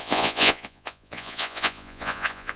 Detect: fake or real fake